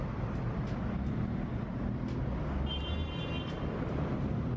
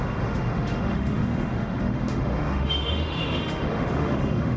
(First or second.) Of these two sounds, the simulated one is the second